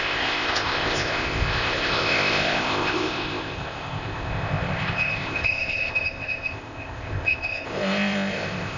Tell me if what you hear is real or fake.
fake